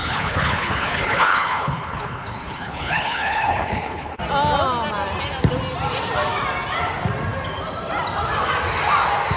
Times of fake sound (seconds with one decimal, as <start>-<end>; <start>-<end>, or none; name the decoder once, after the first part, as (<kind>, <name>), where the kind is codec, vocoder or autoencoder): 0.0-4.2 (codec, HILCodec)